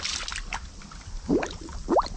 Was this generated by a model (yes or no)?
no